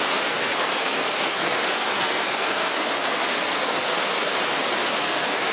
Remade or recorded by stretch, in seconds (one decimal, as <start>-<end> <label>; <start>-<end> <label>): 0.0-4.3 remade; 4.3-5.0 recorded; 5.0-5.5 remade